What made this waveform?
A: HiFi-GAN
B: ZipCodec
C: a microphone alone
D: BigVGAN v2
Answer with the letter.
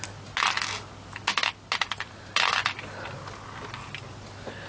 C